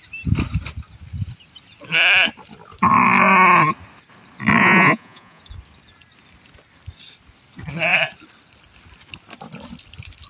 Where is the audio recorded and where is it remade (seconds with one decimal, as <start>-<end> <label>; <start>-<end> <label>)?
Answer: 0.0-4.6 recorded; 4.6-5.4 remade; 5.4-10.3 recorded